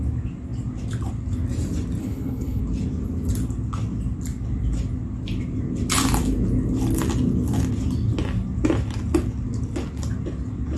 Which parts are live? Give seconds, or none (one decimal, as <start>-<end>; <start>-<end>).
0.0-2.0; 2.6-10.8